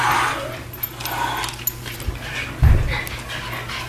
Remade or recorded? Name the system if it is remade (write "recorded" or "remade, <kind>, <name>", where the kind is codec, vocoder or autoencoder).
recorded